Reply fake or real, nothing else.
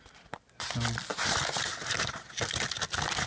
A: real